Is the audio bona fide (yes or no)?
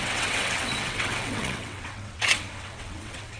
no